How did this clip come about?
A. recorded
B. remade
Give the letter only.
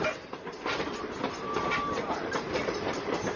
B